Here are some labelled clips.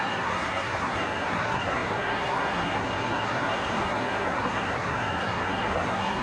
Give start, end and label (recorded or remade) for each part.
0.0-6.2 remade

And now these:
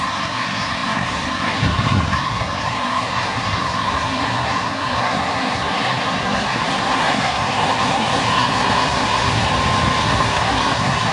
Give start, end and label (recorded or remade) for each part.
0.0-9.5 remade; 9.5-10.0 recorded; 10.0-11.1 remade

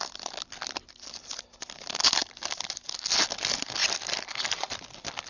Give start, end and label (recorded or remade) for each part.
0.0-5.3 recorded

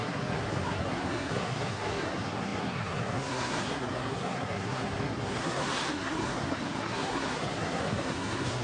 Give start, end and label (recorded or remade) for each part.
0.0-8.6 remade

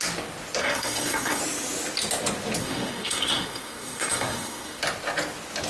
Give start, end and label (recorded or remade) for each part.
0.0-0.6 recorded; 0.6-1.4 remade; 1.4-2.6 recorded; 2.6-4.8 remade; 4.8-5.7 recorded